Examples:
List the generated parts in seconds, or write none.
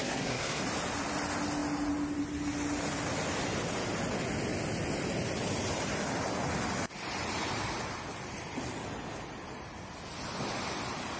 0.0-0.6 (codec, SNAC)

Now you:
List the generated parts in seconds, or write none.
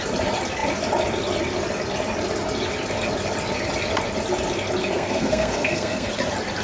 4.8-6.1 (codec, SNAC)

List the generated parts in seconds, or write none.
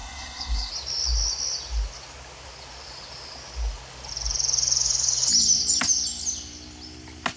0.0-0.7 (codec, SNAC)